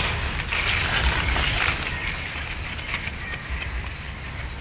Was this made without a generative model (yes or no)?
yes